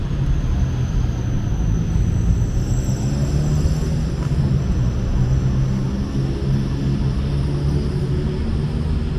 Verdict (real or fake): real